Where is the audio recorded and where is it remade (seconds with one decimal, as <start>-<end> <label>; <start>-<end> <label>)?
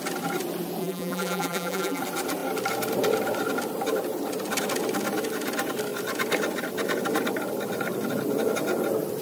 0.0-0.8 recorded; 0.8-2.0 remade; 2.0-9.2 recorded